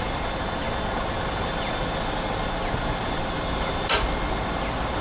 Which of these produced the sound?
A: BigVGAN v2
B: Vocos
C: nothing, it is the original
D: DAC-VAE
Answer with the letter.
C